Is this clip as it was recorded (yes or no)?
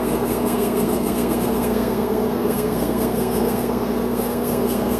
no